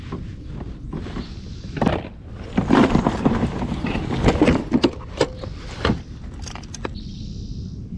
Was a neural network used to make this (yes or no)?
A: no